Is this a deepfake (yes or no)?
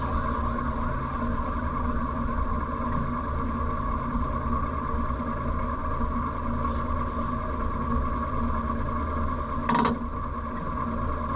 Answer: no